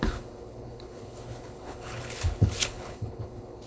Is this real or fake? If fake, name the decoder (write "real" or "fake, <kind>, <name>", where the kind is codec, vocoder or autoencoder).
fake, codec, HILCodec